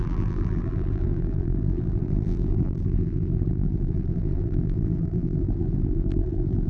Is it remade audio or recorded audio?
remade